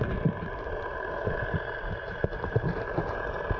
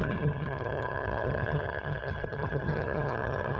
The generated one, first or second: second